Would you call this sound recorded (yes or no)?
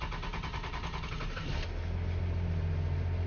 yes